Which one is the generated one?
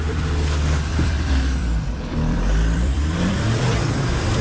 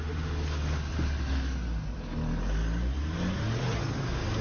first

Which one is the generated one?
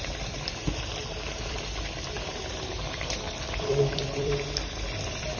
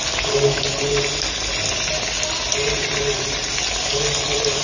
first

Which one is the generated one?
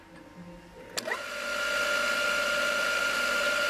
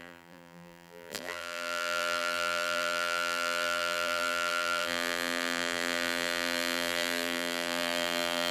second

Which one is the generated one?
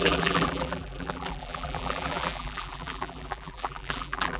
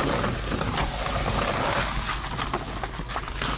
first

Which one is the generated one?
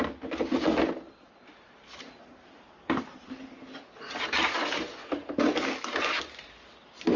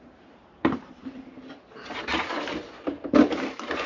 second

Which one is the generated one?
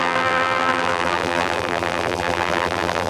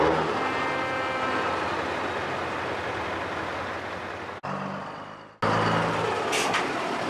first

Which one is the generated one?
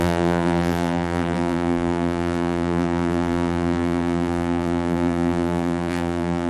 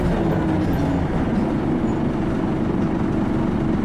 first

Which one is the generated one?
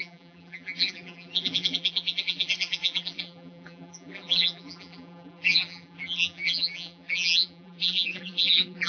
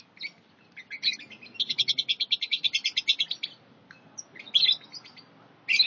first